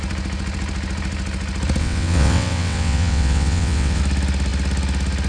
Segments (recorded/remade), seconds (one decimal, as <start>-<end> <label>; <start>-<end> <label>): 0.0-1.8 recorded; 1.8-4.0 remade; 4.0-5.3 recorded